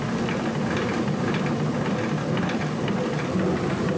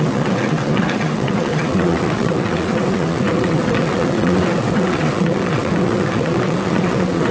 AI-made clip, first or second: second